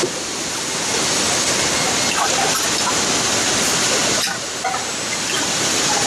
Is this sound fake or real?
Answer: real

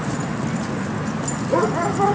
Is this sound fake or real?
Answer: real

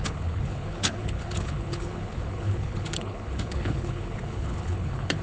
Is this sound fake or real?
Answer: fake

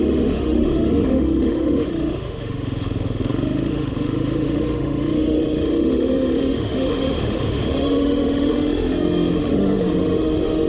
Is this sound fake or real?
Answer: fake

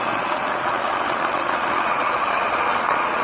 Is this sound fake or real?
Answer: fake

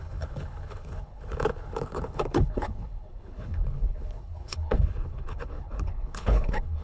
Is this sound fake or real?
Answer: fake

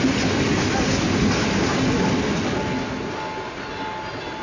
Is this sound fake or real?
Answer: real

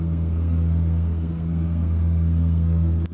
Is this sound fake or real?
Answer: fake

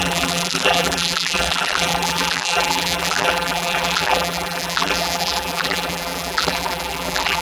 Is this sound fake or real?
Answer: fake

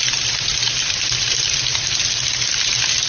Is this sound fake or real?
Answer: real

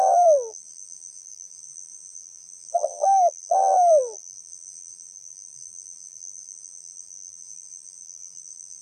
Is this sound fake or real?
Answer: fake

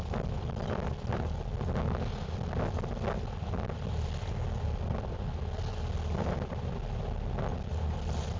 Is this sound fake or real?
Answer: real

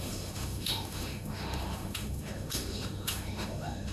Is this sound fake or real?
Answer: fake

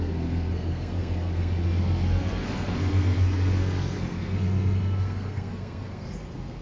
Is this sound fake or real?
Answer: fake